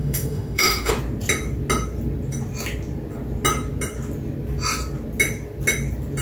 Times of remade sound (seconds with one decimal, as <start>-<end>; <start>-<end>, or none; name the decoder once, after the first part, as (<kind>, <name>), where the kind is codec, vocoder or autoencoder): 0.0-0.9 (autoencoder, DAC-VAE)